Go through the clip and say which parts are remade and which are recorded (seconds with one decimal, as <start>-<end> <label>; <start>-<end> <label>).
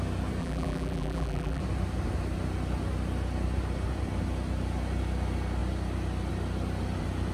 0.0-0.4 recorded; 0.4-1.6 remade; 1.6-7.3 recorded